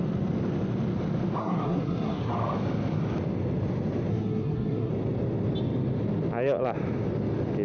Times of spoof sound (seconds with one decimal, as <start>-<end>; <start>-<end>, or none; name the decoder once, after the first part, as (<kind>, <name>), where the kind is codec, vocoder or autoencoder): 1.4-2.3 (codec, SNAC); 4.1-4.9